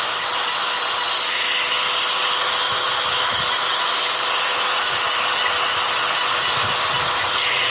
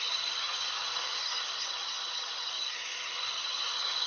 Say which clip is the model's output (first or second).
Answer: second